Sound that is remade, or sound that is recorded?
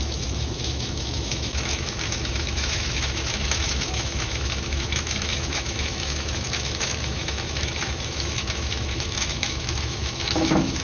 remade